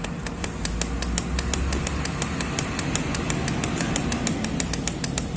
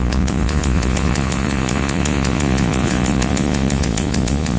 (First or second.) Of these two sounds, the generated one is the second